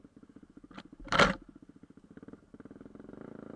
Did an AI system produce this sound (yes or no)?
no